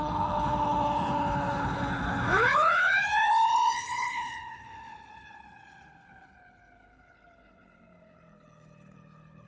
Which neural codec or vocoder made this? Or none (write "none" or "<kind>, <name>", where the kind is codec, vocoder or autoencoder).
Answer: codec, HILCodec